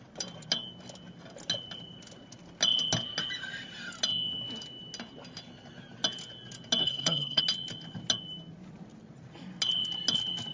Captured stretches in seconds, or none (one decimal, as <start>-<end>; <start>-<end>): 0.0-6.8; 7.4-10.5